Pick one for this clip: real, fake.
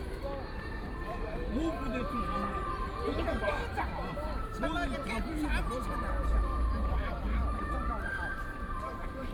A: fake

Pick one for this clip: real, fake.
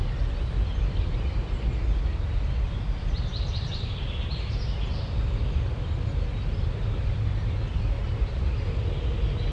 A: real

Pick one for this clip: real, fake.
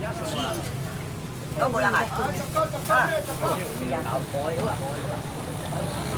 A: real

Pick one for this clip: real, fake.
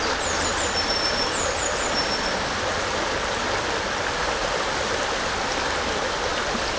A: real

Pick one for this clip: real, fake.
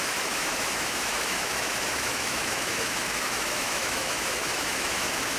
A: fake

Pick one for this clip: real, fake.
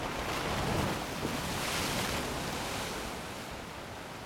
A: real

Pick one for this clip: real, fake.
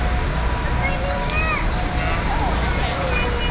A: real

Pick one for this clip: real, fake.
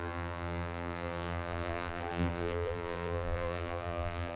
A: fake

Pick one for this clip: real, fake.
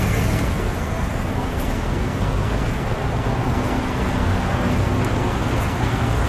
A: fake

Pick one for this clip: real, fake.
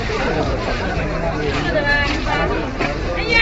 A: fake